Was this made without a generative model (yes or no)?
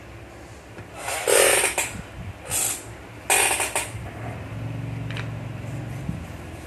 yes